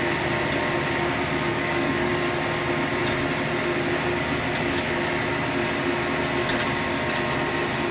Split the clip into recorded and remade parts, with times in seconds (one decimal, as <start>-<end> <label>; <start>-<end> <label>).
0.0-1.5 recorded; 1.5-2.1 remade; 2.1-7.9 recorded